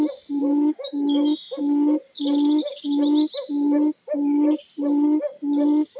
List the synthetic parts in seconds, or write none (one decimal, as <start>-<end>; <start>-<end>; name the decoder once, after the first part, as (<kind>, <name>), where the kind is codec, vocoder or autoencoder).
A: 0.4-1.6 (autoencoder, DAC-VAE)